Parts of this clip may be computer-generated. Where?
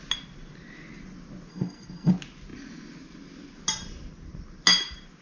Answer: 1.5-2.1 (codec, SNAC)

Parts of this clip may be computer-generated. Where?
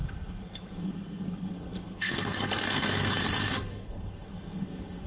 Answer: 0.0-5.1 (codec, SNAC)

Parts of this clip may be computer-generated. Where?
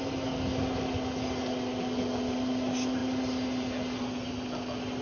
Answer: none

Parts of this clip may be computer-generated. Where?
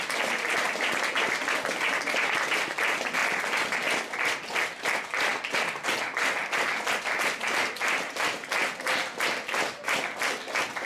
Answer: none